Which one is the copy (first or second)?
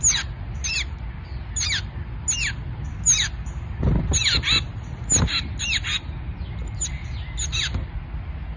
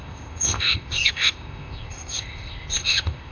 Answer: second